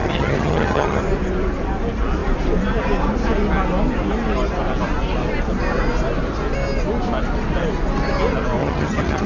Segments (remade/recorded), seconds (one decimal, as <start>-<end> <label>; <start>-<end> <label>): 0.0-1.0 remade; 1.0-8.6 recorded; 8.6-9.3 remade